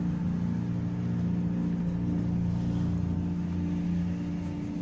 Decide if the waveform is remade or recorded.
recorded